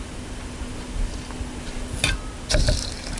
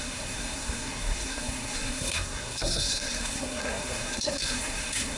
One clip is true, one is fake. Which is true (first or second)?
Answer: first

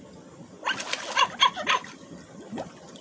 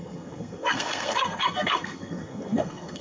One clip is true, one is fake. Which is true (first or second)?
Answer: first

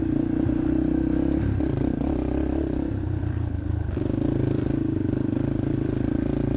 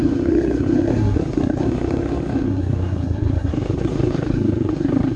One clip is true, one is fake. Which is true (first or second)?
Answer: first